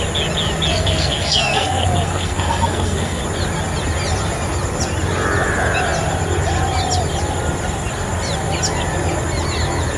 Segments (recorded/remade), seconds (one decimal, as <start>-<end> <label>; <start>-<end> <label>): 0.0-0.7 recorded; 0.7-3.2 remade; 3.2-10.0 recorded

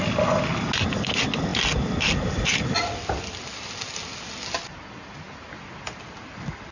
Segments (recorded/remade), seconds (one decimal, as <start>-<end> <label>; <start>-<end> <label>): 0.0-6.7 recorded

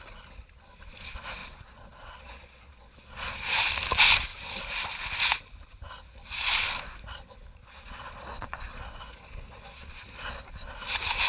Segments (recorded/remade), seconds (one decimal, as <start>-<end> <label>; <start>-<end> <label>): 0.0-1.4 recorded; 1.4-3.7 remade; 3.7-7.6 recorded; 7.6-10.4 remade; 10.4-11.3 recorded